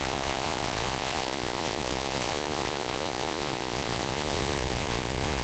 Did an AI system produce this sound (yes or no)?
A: yes